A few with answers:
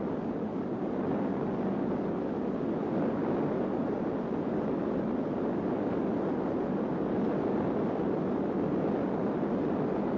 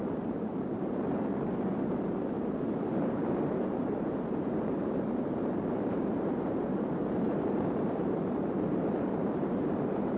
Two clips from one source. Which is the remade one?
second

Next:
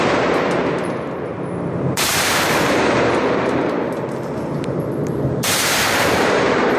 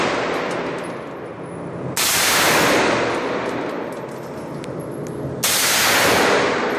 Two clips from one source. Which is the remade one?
first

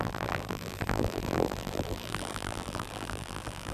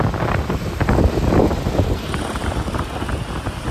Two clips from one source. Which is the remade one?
first